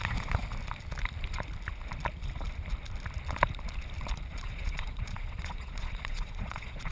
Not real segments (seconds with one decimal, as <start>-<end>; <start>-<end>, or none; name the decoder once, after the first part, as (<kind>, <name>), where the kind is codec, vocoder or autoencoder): 0.0-0.4 (vocoder, Vocos); 4.3-6.9